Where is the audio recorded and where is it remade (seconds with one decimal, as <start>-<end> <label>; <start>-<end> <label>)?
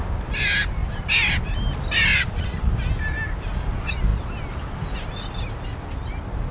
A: 0.0-2.1 recorded; 2.1-2.7 remade; 2.7-6.5 recorded